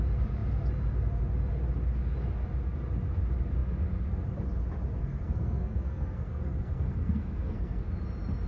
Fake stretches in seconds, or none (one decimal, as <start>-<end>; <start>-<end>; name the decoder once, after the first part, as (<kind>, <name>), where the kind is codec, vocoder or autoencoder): 5.0-7.9 (codec, SNAC)